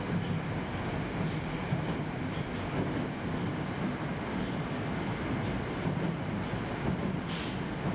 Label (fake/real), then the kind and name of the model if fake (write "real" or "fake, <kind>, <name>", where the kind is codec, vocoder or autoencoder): real